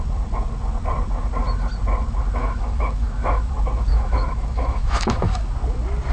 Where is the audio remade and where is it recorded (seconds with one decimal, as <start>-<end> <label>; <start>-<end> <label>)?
0.0-2.4 recorded; 2.4-3.5 remade; 3.5-3.9 recorded; 3.9-5.5 remade; 5.5-6.1 recorded